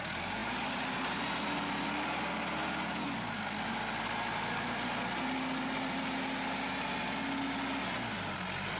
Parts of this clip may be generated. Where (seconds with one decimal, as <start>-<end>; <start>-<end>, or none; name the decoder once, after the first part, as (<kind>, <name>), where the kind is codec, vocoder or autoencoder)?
none

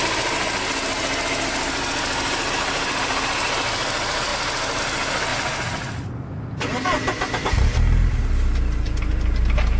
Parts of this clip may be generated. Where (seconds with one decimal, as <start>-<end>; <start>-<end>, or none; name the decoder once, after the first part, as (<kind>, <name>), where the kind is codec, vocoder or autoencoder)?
none

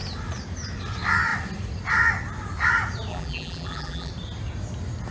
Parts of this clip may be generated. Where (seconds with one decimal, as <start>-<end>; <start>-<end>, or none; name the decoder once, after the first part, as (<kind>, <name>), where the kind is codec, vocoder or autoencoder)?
3.1-4.1 (vocoder, BigVGAN v2)

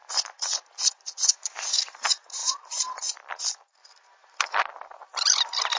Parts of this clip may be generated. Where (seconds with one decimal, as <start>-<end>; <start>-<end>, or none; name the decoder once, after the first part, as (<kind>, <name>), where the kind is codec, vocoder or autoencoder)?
0.0-0.7 (vocoder, BigVGAN v2); 2.4-3.0; 3.8-4.6

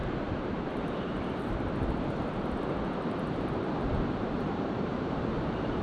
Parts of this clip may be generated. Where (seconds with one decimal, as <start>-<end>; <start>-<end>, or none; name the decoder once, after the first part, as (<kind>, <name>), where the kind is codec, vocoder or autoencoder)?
0.0-5.8 (vocoder, BigVGAN v2)

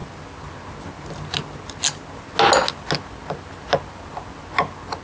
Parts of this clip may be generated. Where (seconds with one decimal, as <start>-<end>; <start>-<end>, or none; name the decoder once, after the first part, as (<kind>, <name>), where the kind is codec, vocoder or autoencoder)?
none

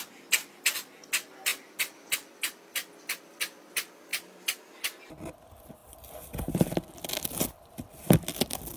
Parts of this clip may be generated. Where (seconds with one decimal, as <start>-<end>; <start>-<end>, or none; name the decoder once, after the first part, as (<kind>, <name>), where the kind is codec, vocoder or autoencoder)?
4.1-5.0 (vocoder, BigVGAN v2)